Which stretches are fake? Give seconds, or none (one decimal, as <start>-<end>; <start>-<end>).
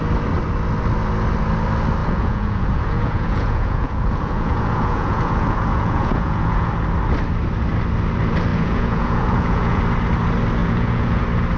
2.0-6.7; 8.5-9.8; 10.6-11.2